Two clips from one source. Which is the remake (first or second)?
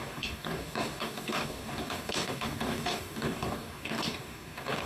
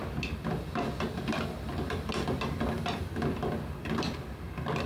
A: first